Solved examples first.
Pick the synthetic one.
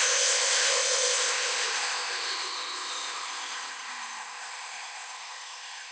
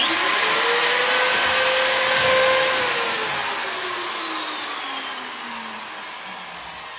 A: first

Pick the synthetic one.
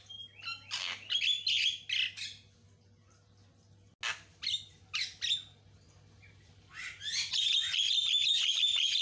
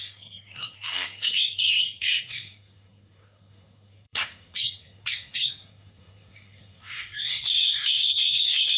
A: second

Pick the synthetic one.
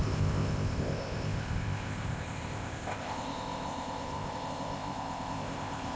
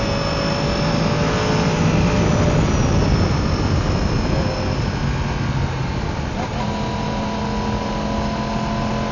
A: first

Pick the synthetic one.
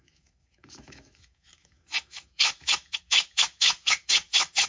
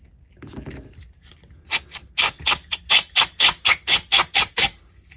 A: first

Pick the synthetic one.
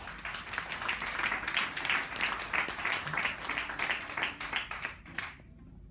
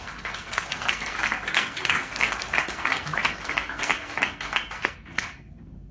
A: second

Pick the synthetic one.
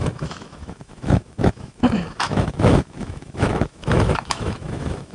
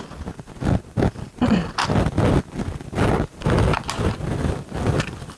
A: first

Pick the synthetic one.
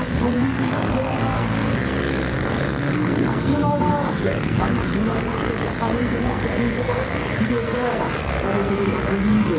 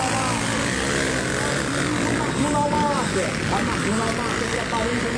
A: first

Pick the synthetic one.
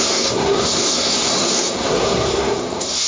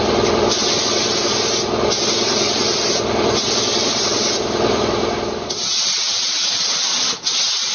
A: first